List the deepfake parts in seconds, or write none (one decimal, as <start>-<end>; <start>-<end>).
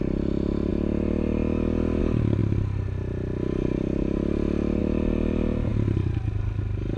none